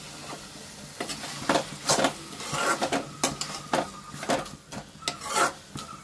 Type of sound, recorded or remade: recorded